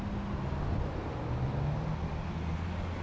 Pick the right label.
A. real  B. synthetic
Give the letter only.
A